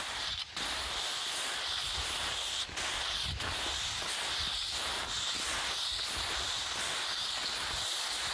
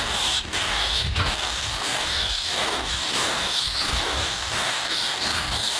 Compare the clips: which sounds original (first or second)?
first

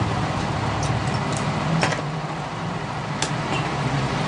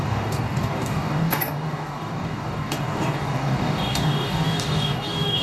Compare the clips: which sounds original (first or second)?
first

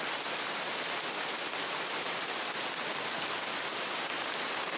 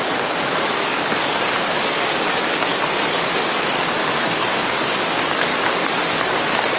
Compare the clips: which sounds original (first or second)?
first